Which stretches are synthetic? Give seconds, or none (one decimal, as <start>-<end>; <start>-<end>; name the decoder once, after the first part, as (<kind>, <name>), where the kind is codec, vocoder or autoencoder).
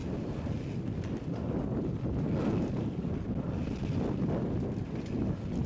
none